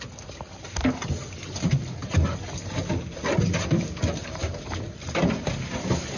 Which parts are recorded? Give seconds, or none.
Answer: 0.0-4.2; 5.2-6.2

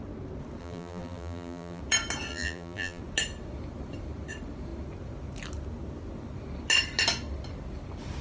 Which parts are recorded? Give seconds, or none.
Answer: 0.0-0.6; 1.8-2.3; 3.0-8.2

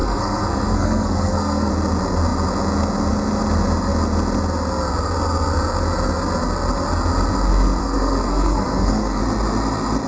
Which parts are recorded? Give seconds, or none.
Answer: 1.7-7.8; 9.2-10.1

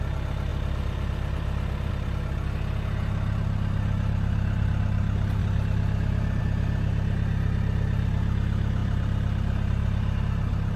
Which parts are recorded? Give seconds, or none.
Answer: 0.0-0.5; 1.9-5.4; 6.4-8.8; 10.2-10.8

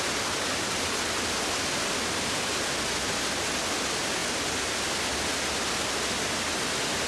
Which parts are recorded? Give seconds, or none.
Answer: 0.0-4.2; 4.8-7.1

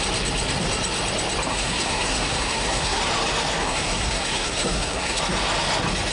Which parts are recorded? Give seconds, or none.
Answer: 0.0-1.5; 3.0-3.6; 5.2-6.1